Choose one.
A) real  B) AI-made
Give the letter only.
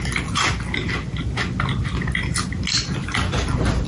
A